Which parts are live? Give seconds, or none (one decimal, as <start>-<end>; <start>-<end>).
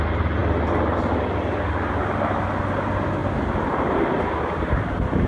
0.0-5.3